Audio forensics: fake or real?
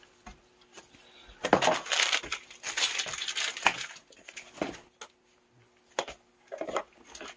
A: real